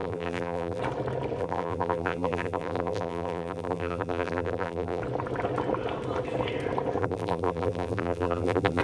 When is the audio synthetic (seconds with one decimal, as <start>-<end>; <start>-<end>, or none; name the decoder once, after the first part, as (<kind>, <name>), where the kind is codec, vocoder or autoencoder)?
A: 0.0-0.8 (vocoder, BigVGAN v2); 1.4-5.0; 7.0-8.8